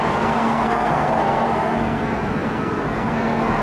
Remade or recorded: remade